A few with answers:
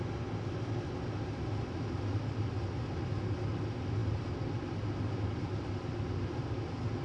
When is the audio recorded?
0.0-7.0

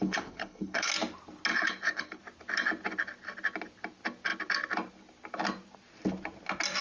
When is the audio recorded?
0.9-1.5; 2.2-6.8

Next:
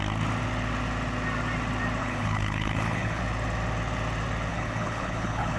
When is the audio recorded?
0.0-2.0; 3.2-4.5